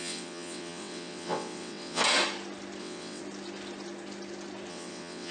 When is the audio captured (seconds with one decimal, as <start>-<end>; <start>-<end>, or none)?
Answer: 2.0-2.8; 3.2-4.7